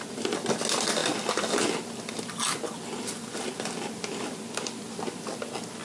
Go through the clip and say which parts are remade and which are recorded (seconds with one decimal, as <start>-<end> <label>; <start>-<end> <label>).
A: 0.0-5.8 recorded